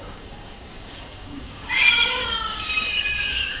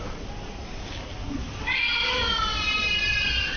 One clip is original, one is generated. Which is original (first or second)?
second